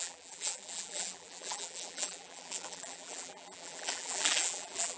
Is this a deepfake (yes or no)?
yes